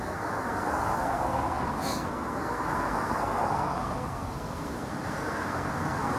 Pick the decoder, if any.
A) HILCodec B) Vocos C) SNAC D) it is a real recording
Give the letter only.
C